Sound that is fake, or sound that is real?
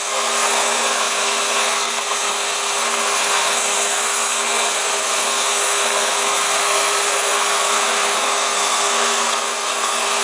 fake